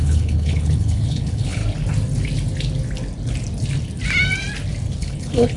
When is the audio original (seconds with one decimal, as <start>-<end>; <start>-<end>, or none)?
1.6-5.0